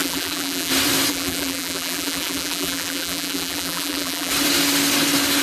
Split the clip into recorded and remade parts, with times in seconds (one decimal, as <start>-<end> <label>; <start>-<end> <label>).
0.0-0.7 remade; 0.7-1.1 recorded; 1.1-4.3 remade; 4.3-5.4 recorded